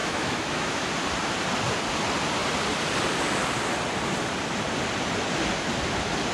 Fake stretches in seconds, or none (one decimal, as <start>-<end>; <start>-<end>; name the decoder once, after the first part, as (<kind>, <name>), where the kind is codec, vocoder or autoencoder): 0.0-0.9 (autoencoder, DAC-VAE)